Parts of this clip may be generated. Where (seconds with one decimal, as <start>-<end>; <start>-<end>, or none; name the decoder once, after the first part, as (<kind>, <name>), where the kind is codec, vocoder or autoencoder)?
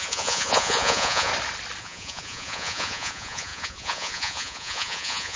0.0-1.3 (vocoder, Vocos); 1.8-5.4